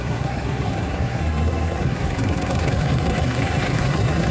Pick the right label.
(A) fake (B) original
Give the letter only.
A